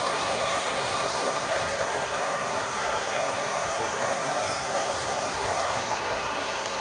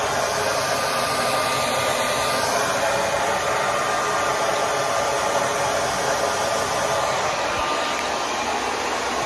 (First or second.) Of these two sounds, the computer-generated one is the first